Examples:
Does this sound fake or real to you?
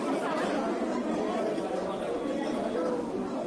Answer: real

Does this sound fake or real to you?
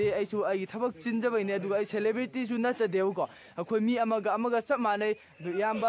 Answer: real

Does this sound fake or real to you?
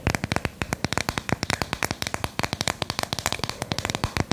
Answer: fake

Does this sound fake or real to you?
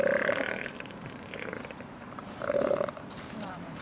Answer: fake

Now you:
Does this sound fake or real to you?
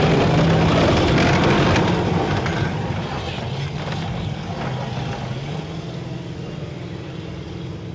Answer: real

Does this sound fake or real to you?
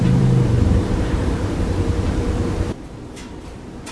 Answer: fake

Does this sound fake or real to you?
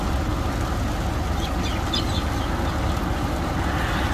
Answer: real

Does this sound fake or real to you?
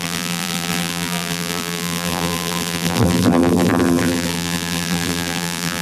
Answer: fake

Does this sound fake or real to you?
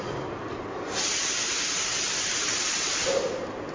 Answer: real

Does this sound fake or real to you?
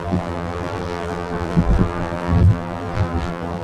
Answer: fake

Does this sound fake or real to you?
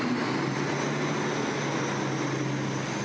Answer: real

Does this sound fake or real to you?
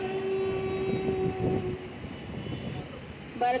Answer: real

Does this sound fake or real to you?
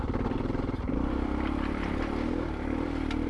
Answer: fake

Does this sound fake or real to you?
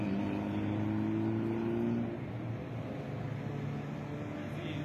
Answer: real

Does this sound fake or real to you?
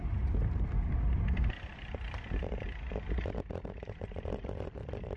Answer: real